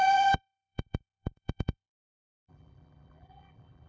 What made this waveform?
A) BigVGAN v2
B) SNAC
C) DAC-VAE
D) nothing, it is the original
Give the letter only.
A